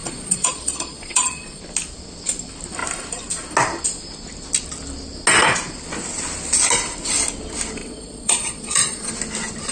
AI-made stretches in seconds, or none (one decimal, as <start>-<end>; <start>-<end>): 0.0-1.6; 7.8-9.1